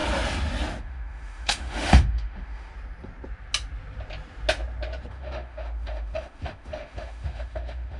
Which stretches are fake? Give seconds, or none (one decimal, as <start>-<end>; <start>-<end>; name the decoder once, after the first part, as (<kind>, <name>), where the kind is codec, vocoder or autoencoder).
0.8-2.7 (autoencoder, DAC-VAE); 5.1-8.0